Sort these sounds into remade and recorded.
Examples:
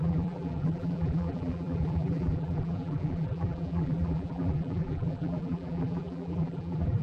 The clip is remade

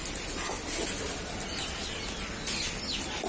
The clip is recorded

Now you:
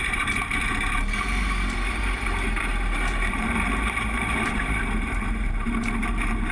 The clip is remade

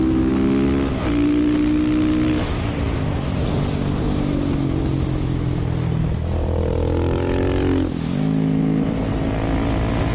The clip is recorded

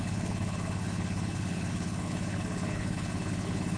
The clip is remade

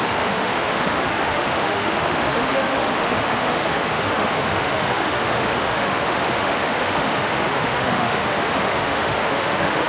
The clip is remade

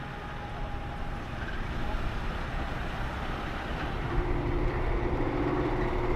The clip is recorded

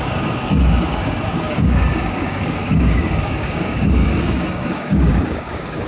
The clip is remade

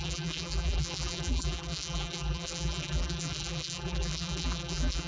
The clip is remade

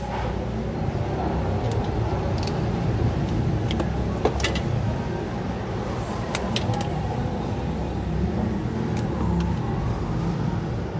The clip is recorded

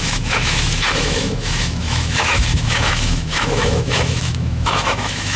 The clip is remade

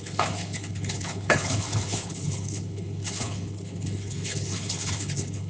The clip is remade